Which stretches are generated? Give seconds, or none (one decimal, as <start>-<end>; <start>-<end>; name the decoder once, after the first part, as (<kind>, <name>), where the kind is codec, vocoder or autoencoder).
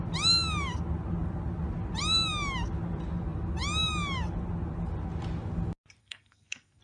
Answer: 6.0-6.8 (codec, SNAC)